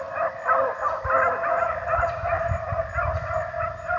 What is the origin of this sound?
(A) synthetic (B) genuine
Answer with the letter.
B